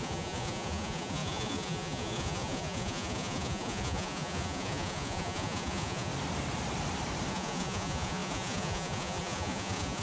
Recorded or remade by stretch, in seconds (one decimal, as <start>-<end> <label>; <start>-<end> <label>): 0.0-6.1 remade; 6.1-7.3 recorded; 7.3-10.0 remade